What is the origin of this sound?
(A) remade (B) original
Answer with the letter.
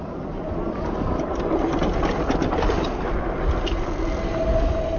B